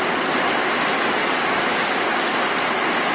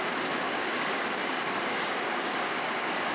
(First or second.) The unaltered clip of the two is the first